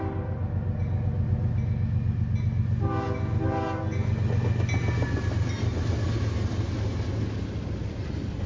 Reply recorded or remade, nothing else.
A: recorded